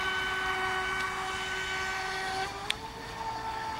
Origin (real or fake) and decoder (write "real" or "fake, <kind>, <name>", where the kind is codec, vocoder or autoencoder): real